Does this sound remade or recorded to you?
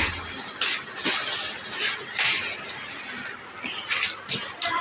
recorded